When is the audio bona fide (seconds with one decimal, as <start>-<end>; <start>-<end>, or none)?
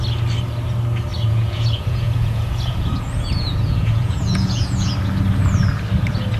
0.0-1.1; 4.9-6.4